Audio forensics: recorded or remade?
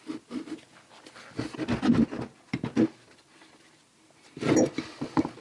recorded